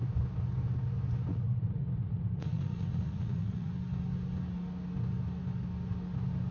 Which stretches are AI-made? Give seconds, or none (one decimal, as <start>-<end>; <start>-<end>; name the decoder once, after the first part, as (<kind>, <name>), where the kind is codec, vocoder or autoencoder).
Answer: 1.3-3.7 (vocoder, Vocos)